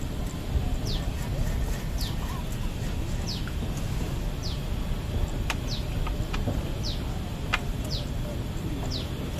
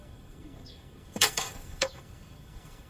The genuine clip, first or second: first